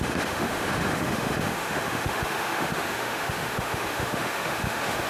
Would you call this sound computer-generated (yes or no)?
yes